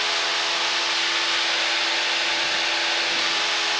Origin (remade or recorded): recorded